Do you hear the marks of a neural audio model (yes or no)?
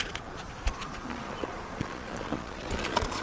yes